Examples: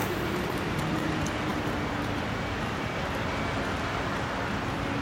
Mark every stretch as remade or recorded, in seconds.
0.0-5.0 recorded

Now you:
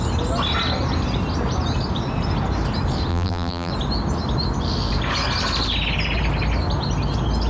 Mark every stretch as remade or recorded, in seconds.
0.0-3.1 recorded; 3.1-3.7 remade; 3.7-7.5 recorded

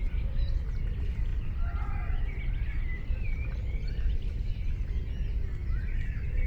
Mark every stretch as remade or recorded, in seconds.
0.0-1.3 recorded; 1.3-4.5 remade; 4.5-6.5 recorded

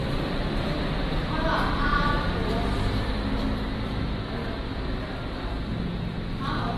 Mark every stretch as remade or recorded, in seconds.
0.0-4.0 remade; 4.0-4.4 recorded; 4.4-5.8 remade; 5.8-6.8 recorded

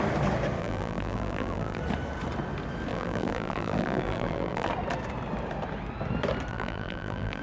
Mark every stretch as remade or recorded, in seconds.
0.0-0.6 recorded; 0.6-1.8 remade; 1.8-2.9 recorded; 2.9-4.7 remade; 4.7-6.5 recorded; 6.5-7.4 remade

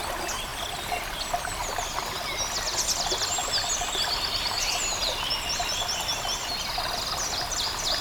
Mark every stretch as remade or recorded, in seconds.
0.0-8.0 recorded